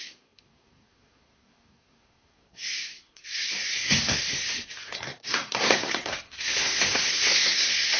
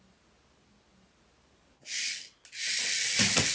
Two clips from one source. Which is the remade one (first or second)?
first